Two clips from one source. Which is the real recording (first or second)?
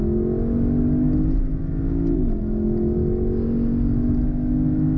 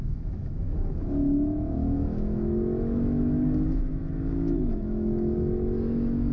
first